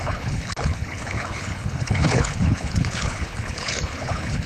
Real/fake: fake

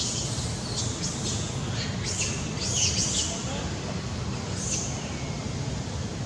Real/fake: real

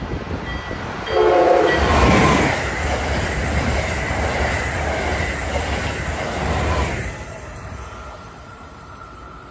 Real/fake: real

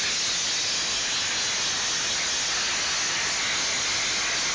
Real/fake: real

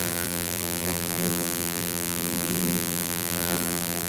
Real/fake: fake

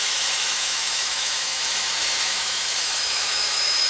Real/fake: fake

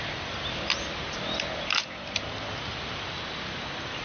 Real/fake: real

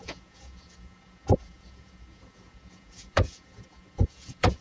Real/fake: fake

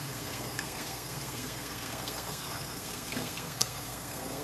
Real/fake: fake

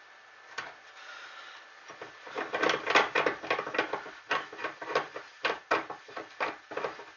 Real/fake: real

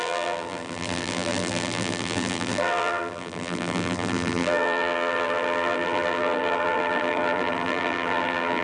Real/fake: fake